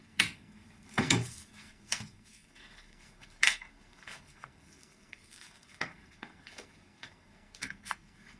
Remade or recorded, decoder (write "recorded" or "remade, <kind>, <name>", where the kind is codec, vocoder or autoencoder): remade, codec, SNAC